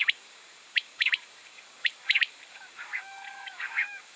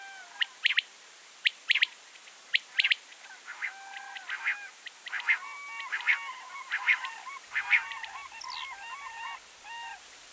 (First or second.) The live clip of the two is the second